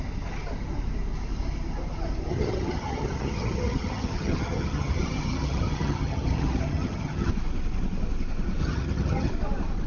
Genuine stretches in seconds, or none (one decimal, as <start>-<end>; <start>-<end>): 0.0-2.3; 7.3-8.6; 9.3-9.9

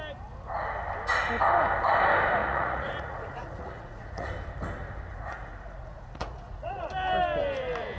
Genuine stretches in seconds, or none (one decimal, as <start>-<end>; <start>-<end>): 0.0-2.4; 4.3-5.1; 6.9-8.0

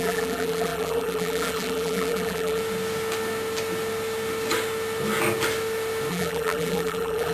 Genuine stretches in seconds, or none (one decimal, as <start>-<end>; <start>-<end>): 2.6-6.1

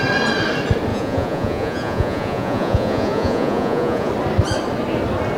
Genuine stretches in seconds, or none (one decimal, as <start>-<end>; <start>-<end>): 0.0-0.9; 4.1-5.4

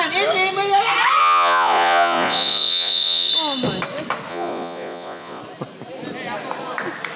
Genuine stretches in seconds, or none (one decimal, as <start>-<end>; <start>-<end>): 0.0-1.2; 3.3-4.3; 5.4-7.2

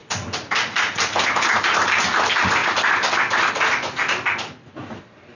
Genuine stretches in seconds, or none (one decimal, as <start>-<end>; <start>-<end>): 0.0-5.3

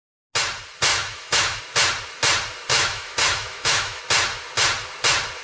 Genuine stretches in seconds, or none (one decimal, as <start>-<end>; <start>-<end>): 0.0-0.9; 1.6-2.7; 4.0-5.4

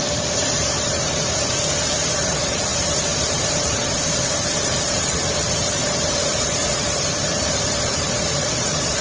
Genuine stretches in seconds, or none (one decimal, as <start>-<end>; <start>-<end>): none